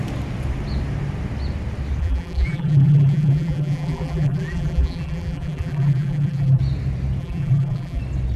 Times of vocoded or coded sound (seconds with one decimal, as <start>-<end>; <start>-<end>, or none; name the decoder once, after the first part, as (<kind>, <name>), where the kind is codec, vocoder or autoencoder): 2.0-6.6 (vocoder, BigVGAN v2); 7.2-8.0